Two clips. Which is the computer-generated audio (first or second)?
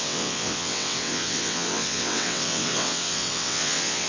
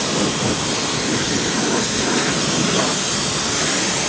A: first